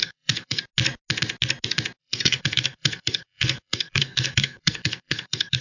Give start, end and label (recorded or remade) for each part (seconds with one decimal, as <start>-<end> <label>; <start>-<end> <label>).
0.0-0.6 remade; 0.6-2.0 recorded; 2.0-5.6 remade